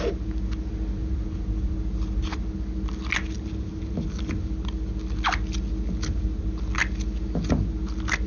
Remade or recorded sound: recorded